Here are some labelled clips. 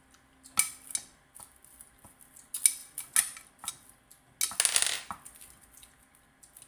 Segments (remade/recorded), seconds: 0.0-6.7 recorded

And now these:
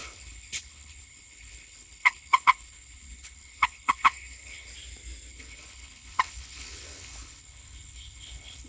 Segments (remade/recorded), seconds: 0.0-4.7 remade; 4.7-5.3 recorded; 5.3-8.7 remade

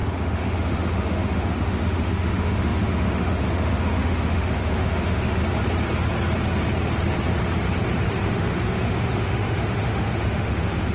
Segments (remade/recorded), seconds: 0.0-5.4 remade; 5.4-8.2 recorded; 8.2-10.9 remade

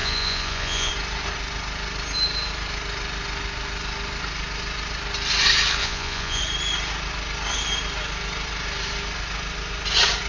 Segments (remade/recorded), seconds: 0.0-0.9 remade; 0.9-5.8 recorded; 5.8-6.4 remade; 6.4-10.3 recorded

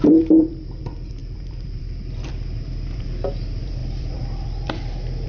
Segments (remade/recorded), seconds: 0.0-5.3 remade